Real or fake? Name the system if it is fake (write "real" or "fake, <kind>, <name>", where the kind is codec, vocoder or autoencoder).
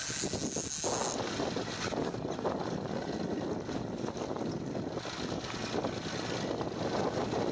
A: real